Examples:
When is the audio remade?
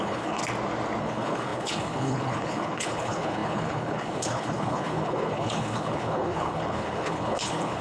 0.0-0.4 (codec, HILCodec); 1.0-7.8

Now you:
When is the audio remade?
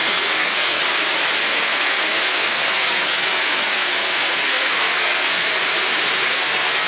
0.0-0.8 (codec, SNAC); 1.4-5.5; 6.3-6.9